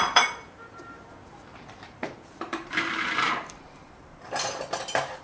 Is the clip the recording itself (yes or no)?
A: no